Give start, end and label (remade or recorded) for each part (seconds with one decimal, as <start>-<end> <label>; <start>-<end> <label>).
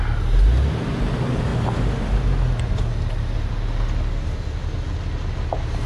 0.0-5.9 recorded